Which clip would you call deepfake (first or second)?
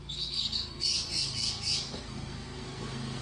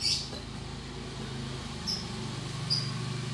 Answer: first